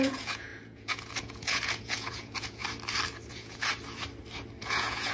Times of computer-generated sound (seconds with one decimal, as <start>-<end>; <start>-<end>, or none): 0.0-2.6; 3.3-3.7; 4.6-5.1